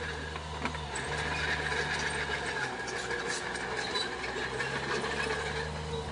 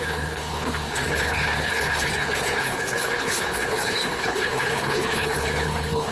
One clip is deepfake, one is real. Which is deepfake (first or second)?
second